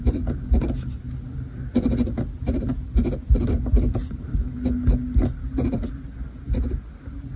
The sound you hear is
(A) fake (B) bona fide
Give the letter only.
B